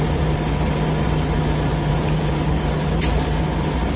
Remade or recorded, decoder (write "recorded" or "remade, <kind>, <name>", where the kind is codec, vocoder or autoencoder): recorded